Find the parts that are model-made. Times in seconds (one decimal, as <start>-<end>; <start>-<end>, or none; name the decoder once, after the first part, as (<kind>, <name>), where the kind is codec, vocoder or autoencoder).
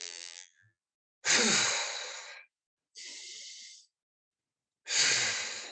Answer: 0.0-0.8 (vocoder, BigVGAN v2)